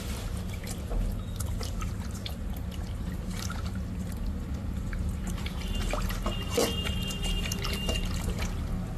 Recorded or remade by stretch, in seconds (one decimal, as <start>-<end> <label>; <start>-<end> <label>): 0.0-9.0 recorded